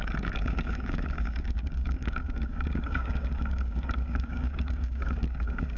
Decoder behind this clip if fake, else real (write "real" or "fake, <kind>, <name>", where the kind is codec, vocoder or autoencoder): fake, codec, DAC